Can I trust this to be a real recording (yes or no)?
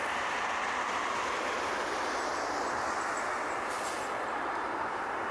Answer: yes